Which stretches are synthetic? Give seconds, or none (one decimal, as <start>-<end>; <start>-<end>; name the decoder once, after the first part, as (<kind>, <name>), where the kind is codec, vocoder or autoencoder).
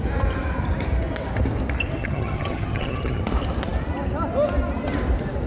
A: 2.0-3.2 (vocoder, HiFi-GAN)